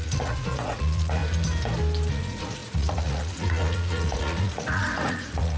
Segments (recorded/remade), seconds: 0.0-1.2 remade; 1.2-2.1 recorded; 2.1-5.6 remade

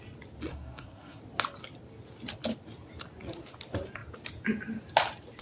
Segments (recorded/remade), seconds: 0.0-0.5 recorded; 0.5-1.2 remade; 1.2-5.4 recorded

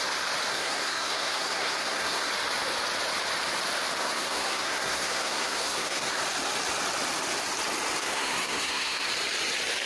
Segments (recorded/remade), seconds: 0.0-0.5 recorded; 0.5-2.3 remade; 2.3-4.0 recorded; 4.0-6.2 remade; 6.2-8.0 recorded; 8.0-9.1 remade; 9.1-9.9 recorded

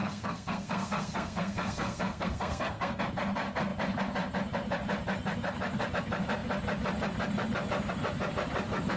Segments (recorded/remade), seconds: 0.0-3.0 remade; 3.0-9.0 recorded

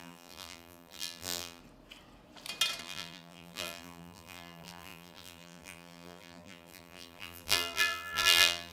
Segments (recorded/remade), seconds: 0.0-1.6 remade; 1.6-2.8 recorded; 2.8-8.7 remade

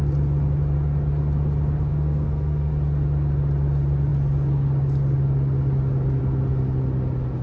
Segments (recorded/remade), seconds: 0.0-1.9 recorded; 1.9-2.7 remade; 2.7-7.4 recorded

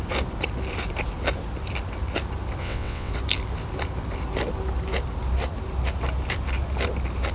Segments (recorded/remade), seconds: 0.0-2.6 recorded; 2.6-3.1 remade; 3.1-7.3 recorded